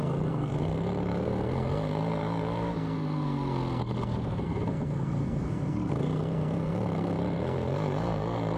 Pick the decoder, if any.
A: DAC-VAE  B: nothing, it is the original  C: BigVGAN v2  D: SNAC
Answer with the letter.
D